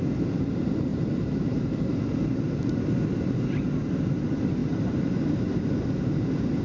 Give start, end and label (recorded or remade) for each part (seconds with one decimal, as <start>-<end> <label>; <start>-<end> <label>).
0.0-0.9 recorded; 0.9-1.7 remade; 1.7-4.6 recorded; 4.6-5.5 remade; 5.5-6.6 recorded